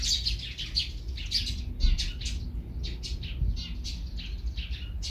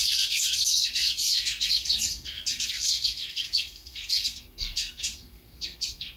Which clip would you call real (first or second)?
first